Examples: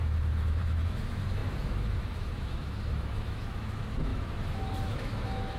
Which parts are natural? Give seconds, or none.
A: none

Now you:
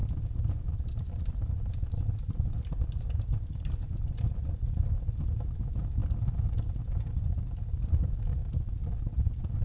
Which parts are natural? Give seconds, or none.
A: 0.0-9.6

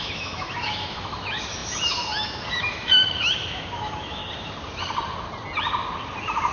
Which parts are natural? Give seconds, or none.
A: 4.2-6.5